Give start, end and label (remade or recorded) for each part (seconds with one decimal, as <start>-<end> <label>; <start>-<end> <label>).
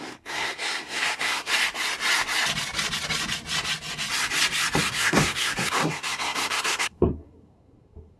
0.0-1.5 remade; 1.5-4.9 recorded; 4.9-8.2 remade